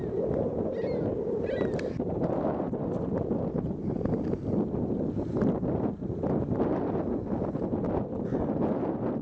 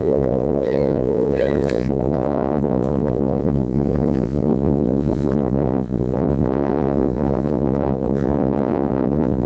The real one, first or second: first